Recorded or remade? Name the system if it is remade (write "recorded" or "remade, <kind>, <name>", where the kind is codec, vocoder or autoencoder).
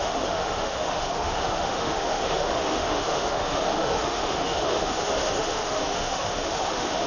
remade, autoencoder, DAC-VAE